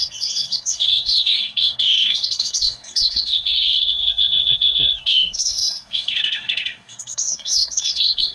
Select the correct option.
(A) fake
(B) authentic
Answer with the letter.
A